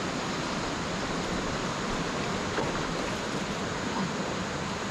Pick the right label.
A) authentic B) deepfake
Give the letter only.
A